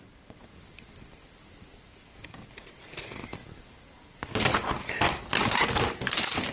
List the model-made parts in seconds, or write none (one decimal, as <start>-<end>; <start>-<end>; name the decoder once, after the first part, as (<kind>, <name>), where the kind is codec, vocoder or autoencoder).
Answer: none